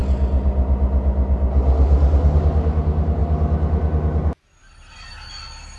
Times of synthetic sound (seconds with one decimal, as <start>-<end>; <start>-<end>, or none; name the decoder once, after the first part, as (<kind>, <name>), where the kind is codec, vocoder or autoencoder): none